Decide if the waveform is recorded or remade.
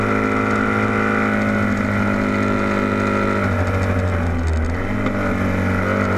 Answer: recorded